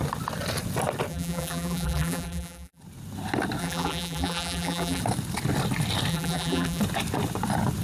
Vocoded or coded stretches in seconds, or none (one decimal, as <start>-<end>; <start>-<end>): 1.1-2.8; 3.6-5.0; 6.1-6.8

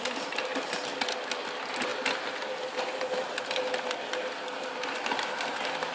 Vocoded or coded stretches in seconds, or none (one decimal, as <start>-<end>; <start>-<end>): none

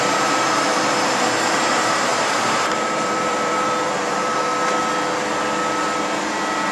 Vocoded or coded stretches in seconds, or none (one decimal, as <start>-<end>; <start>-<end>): 0.0-4.5

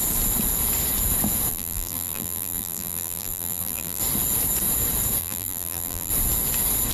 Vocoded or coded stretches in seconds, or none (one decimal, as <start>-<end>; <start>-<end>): 1.5-4.0; 5.2-6.1

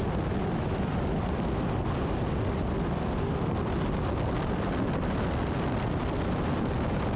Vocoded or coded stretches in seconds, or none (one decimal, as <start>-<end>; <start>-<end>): none

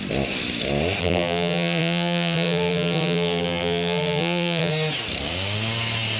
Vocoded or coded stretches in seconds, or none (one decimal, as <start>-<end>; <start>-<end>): 1.0-4.7